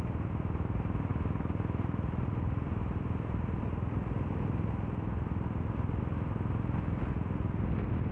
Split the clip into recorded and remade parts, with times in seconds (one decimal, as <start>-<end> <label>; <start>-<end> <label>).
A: 0.0-8.1 recorded